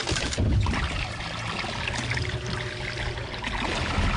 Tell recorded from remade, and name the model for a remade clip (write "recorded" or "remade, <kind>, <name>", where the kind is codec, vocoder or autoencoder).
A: recorded